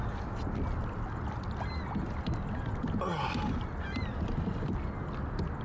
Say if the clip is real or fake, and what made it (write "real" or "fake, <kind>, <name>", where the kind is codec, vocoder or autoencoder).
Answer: real